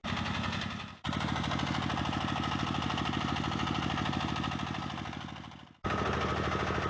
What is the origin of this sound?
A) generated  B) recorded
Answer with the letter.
B